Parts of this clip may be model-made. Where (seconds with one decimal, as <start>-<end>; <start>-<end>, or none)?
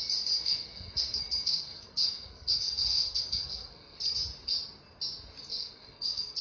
0.4-4.2; 5.5-6.4